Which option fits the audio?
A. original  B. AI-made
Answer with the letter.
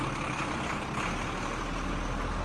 A